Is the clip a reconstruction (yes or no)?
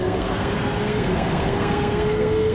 yes